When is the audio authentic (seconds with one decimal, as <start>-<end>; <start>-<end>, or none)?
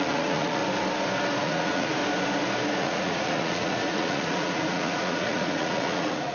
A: 0.6-1.4; 2.0-2.8